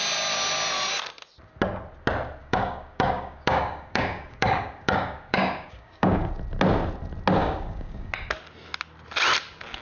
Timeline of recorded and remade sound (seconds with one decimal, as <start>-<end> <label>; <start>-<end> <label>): 0.0-2.4 recorded; 2.4-6.3 remade; 6.3-7.4 recorded; 7.4-8.1 remade; 8.1-9.8 recorded